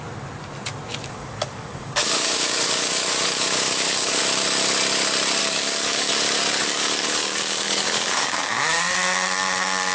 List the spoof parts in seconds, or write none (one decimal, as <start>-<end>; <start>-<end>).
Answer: 1.0-4.2; 5.4-6.1; 6.6-8.6